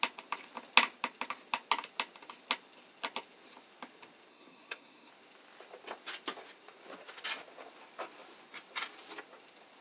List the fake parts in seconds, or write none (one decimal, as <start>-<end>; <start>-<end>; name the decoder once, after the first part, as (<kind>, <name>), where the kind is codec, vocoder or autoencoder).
4.3-5.1 (codec, SNAC)